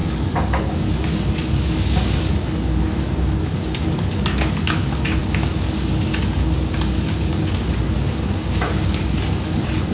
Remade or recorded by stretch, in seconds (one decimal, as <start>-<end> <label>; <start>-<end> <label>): 0.0-9.9 remade